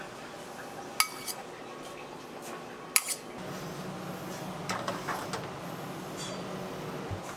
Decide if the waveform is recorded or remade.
recorded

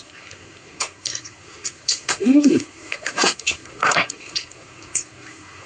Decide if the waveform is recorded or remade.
remade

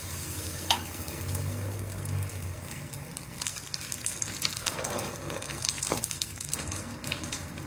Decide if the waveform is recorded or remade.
remade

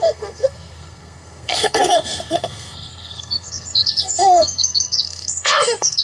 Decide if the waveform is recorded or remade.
remade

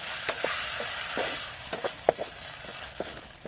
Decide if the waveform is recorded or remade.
recorded